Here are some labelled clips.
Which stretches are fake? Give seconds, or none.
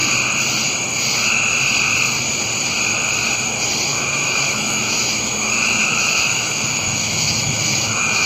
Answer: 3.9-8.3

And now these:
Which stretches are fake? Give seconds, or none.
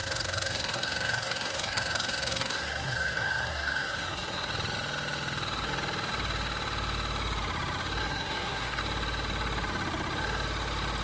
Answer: 0.0-4.5; 8.0-8.8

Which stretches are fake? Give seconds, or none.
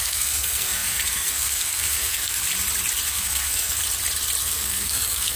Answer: 0.0-2.4; 3.1-3.8; 4.4-5.4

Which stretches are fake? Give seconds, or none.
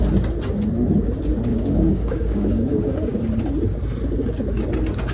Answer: 1.5-3.2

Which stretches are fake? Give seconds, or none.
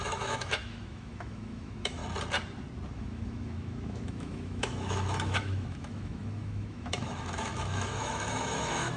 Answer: 0.0-2.0; 2.9-9.0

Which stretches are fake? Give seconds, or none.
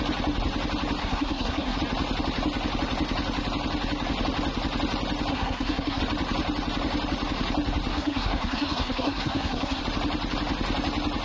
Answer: 1.0-1.8; 5.3-6.0; 7.9-9.8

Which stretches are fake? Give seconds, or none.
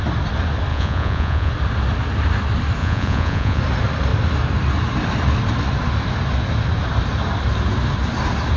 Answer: 0.7-1.5; 2.8-3.6